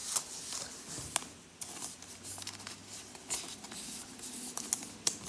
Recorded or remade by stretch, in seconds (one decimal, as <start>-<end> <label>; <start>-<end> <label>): 0.0-5.3 recorded